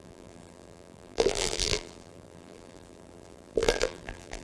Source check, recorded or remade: remade